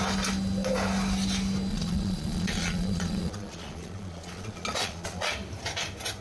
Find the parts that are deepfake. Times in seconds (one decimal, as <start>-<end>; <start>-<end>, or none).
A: 1.7-5.3